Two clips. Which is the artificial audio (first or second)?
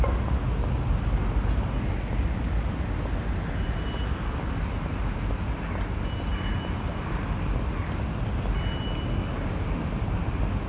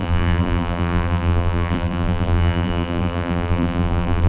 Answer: second